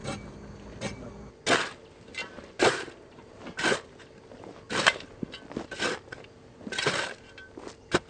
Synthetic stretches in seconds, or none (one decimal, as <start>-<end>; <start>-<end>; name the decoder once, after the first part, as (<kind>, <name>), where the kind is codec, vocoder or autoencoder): 2.2-3.4 (vocoder, BigVGAN v2)